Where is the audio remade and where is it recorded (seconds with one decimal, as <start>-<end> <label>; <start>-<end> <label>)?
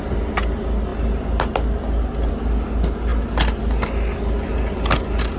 0.0-5.4 recorded